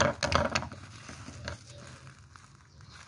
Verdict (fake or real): real